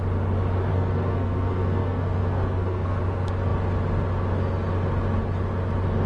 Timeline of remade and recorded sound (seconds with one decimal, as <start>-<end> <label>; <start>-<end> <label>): 0.0-0.7 recorded; 0.7-3.0 remade; 3.0-6.1 recorded